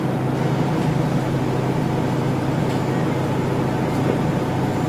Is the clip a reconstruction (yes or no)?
no